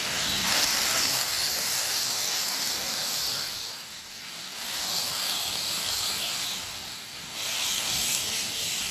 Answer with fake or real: fake